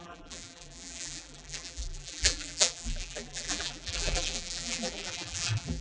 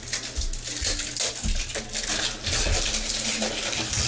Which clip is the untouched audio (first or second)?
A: second